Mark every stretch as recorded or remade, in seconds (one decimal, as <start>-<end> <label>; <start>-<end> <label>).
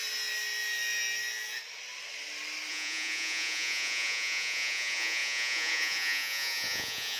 0.0-2.7 recorded; 2.7-7.2 remade